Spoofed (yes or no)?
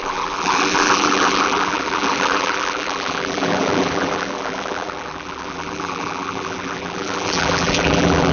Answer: yes